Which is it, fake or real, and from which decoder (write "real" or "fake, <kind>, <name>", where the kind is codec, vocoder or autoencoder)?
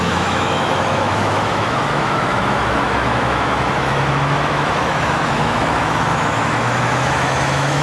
fake, autoencoder, DAC-VAE